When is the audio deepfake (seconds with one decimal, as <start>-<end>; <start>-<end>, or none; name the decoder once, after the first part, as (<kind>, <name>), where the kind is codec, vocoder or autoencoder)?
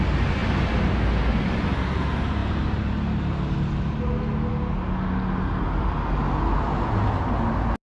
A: none